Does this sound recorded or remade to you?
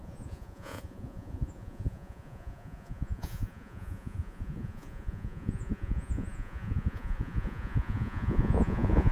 remade